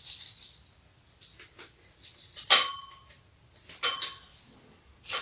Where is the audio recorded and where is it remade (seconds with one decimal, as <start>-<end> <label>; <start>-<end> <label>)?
0.0-5.2 recorded